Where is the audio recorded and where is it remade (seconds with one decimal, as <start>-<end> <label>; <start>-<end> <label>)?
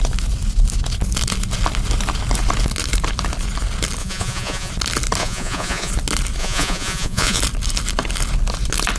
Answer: 0.0-4.0 recorded; 4.0-4.7 remade; 4.7-5.2 recorded; 5.2-5.9 remade; 5.9-6.4 recorded; 6.4-7.4 remade; 7.4-9.0 recorded